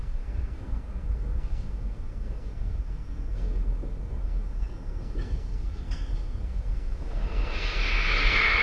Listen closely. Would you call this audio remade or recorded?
remade